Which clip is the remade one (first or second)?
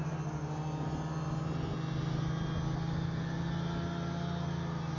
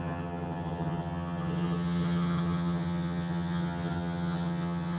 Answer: second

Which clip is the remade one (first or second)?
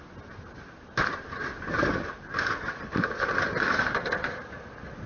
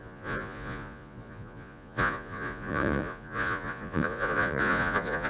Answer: second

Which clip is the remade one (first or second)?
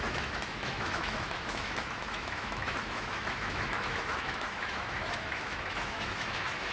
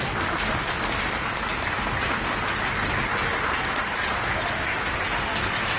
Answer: first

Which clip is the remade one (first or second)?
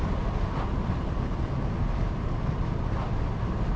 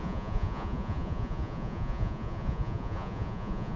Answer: second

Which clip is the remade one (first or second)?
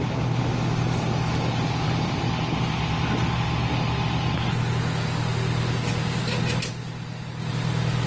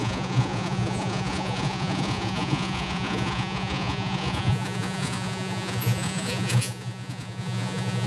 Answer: second